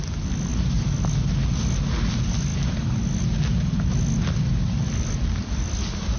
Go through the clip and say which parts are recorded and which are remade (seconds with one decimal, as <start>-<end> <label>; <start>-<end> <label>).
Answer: 0.0-6.2 recorded